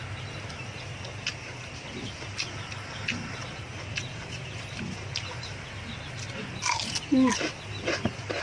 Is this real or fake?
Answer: real